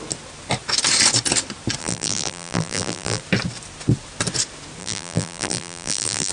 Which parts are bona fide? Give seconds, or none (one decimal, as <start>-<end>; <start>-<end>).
0.0-1.8; 3.2-4.8